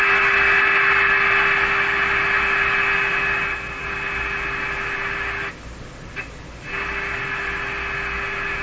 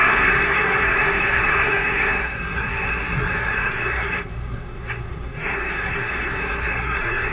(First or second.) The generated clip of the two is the second